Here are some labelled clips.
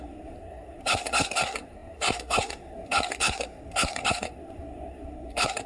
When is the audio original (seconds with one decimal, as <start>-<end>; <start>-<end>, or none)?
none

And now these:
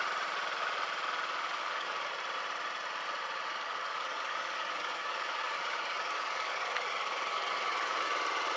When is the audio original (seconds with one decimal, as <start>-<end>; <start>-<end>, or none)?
0.0-1.6; 2.1-3.5; 8.1-8.6

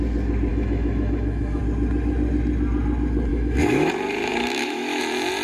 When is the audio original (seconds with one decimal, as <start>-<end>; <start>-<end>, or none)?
0.0-0.5; 1.6-3.3; 3.9-4.3; 5.0-5.4

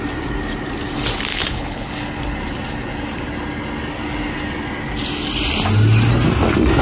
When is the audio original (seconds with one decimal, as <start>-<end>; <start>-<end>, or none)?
0.0-1.3; 2.0-6.8

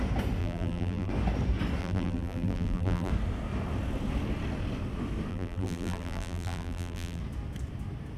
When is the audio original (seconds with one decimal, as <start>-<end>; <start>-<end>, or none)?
0.0-0.4; 1.1-1.8; 3.1-5.3; 7.2-8.2

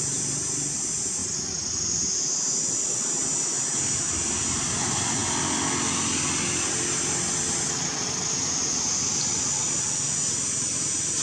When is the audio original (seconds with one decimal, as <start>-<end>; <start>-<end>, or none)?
0.0-11.2

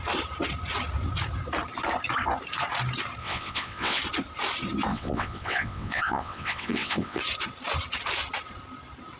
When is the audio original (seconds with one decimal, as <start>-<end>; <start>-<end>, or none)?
0.0-3.2; 4.0-4.9; 7.2-9.2

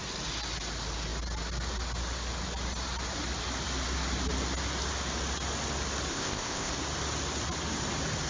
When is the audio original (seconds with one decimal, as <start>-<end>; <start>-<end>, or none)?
0.0-6.1; 6.7-8.3